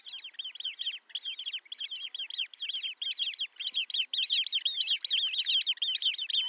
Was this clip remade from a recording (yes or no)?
no